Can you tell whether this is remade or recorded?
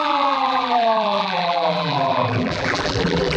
remade